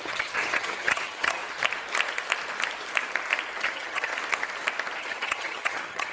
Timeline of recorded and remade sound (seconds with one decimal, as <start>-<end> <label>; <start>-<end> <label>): 0.0-1.4 remade; 1.4-3.6 recorded; 3.6-4.1 remade; 4.1-5.0 recorded; 5.0-6.1 remade